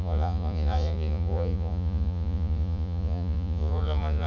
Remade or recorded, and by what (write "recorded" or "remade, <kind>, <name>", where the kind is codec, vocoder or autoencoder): remade, vocoder, Vocos